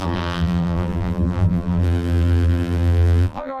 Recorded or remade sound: remade